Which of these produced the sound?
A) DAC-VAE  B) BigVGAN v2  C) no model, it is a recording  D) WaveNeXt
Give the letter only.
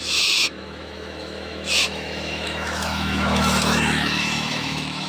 A